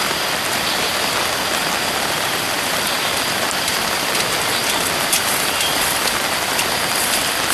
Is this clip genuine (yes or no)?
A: no